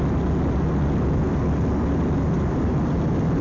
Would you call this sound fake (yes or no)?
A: no